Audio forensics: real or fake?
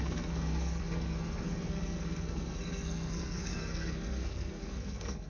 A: fake